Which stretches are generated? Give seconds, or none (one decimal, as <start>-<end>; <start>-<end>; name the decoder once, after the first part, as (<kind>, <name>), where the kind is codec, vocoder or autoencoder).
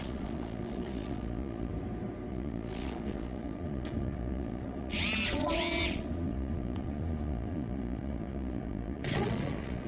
0.0-1.7 (vocoder, Vocos); 2.3-9.9